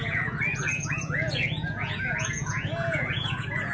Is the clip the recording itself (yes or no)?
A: no